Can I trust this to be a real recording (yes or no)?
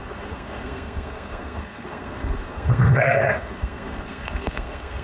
no